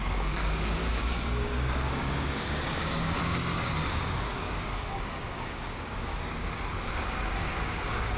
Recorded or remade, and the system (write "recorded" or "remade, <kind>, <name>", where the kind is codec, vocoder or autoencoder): remade, codec, DAC